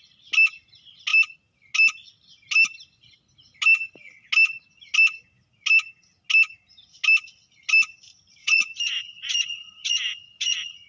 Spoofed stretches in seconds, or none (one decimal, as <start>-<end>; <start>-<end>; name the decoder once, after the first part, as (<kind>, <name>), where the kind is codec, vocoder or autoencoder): 8.4-10.9 (vocoder, Vocos)